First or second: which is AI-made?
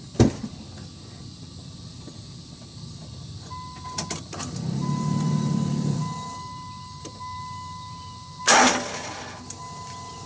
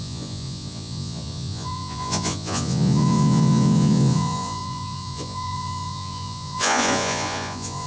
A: second